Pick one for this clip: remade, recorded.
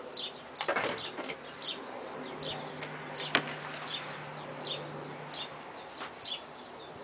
recorded